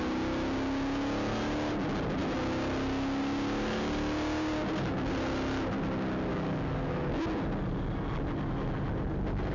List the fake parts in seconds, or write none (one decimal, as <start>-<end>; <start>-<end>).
6.3-7.2